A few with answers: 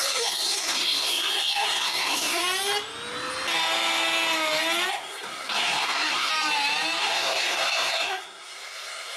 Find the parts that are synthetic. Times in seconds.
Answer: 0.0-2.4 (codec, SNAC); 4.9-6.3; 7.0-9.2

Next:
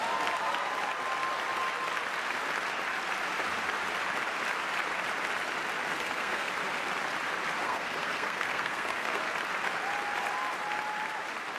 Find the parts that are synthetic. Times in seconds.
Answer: 5.9-6.5 (codec, SNAC); 7.6-9.2